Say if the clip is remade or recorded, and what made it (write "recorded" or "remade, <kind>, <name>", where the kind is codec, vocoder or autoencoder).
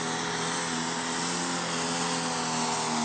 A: recorded